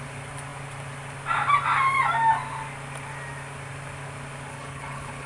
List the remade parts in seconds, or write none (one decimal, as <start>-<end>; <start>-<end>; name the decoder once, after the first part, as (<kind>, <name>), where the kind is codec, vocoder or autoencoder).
4.5-5.3 (codec, HILCodec)